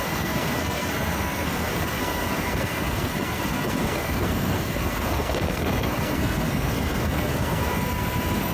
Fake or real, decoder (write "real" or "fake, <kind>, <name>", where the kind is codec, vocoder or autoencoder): fake, codec, SNAC